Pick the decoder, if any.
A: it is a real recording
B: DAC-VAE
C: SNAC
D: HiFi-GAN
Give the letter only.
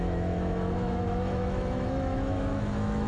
B